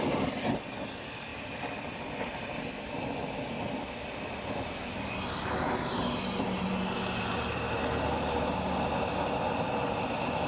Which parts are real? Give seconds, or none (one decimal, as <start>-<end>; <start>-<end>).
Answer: 0.0-10.5